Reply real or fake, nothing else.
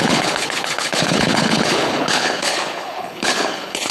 fake